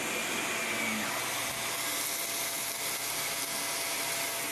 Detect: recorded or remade recorded